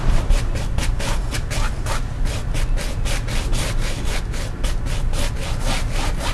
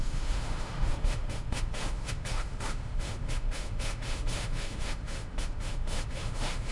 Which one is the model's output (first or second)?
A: second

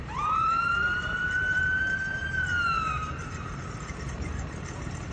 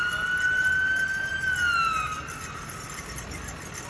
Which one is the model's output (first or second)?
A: first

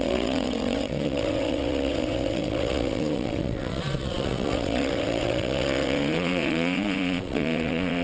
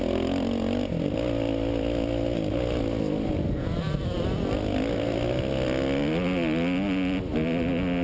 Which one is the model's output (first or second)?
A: first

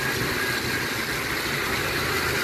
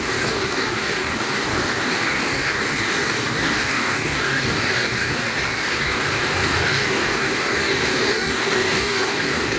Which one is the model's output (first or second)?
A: second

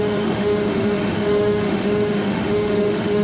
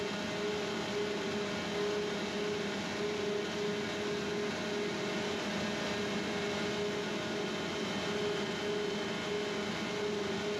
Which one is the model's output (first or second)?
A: first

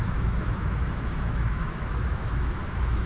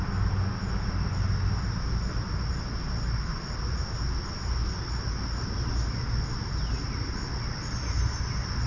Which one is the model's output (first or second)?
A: first